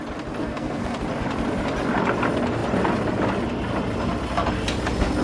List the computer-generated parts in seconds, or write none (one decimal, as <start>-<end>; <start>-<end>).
0.4-1.0